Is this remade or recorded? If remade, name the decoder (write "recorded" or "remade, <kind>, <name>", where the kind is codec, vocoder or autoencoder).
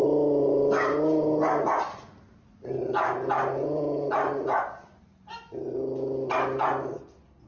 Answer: recorded